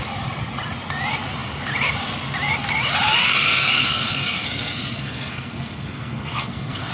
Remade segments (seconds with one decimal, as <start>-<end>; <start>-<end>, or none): 3.2-6.9